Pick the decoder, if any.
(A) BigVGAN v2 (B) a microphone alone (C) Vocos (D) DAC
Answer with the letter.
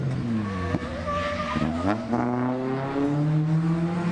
B